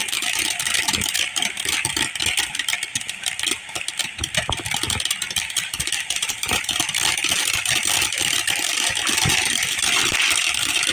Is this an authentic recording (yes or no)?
no